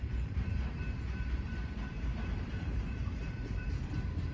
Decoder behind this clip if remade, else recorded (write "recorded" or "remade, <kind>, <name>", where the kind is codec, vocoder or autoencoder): remade, vocoder, BigVGAN v2